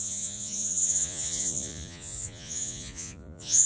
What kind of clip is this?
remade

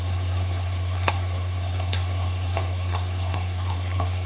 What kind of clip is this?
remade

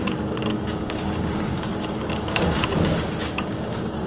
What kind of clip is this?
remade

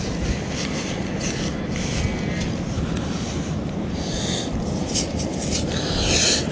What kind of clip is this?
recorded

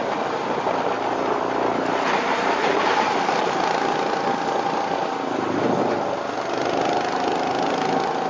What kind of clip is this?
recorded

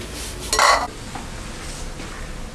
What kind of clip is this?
recorded